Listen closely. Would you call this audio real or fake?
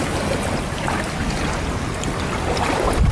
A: real